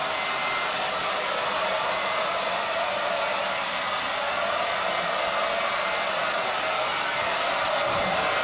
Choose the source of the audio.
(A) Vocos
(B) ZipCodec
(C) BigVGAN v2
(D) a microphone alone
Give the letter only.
D